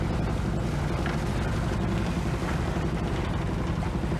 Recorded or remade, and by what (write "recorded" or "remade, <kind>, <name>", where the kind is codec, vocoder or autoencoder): recorded